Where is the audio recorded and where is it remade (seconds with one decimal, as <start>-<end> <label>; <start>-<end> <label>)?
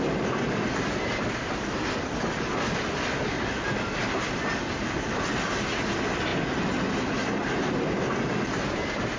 0.0-9.2 recorded